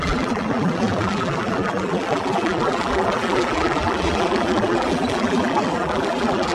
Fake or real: fake